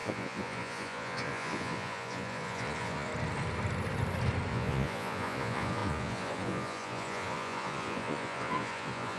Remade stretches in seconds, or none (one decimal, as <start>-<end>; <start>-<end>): 0.0-3.1; 4.5-9.2